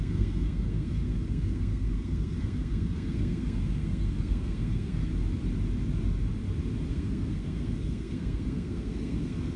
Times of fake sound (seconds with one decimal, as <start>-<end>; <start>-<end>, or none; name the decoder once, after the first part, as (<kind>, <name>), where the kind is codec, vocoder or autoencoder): 0.0-5.1 (codec, SNAC); 6.9-9.6